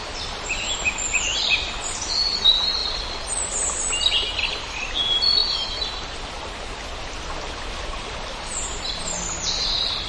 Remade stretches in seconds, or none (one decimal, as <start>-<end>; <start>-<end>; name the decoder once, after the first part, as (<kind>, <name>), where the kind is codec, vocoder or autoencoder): none